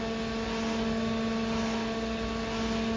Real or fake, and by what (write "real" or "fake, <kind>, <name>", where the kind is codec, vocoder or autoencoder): real